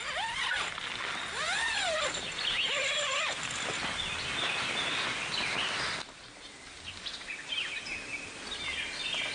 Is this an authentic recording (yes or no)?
yes